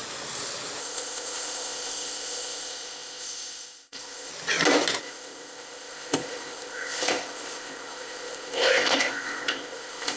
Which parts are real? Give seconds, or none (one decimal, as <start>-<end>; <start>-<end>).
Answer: 0.0-0.8; 4.3-5.0